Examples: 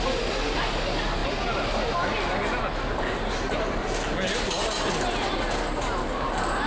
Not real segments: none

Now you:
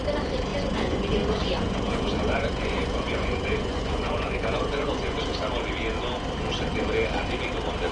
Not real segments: 0.5-5.2 (vocoder, Vocos)

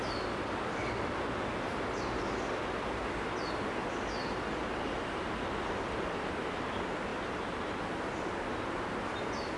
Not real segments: none

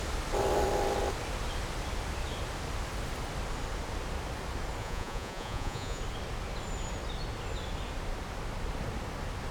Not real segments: 4.8-6.0 (vocoder, Vocos)

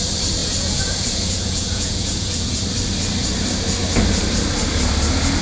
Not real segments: 0.4-2.6 (vocoder, Vocos)

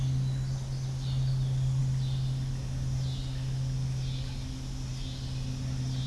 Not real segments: none

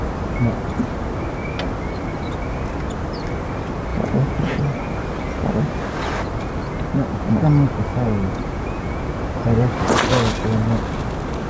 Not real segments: 3.9-4.6 (vocoder, Vocos); 7.9-9.2